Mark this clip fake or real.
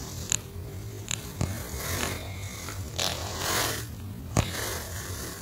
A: real